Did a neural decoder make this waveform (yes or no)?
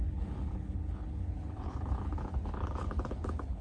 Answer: yes